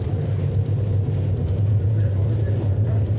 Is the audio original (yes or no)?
no